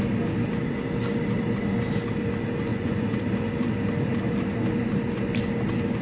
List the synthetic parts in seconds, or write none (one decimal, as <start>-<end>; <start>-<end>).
2.7-3.2